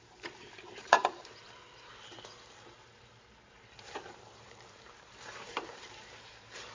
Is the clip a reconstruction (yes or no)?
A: yes